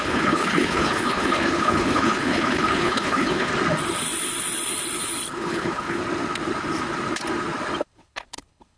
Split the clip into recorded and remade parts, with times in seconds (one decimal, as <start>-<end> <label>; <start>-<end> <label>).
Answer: 0.0-3.5 remade; 3.5-5.3 recorded; 5.3-6.0 remade; 6.0-7.8 recorded; 7.8-8.8 remade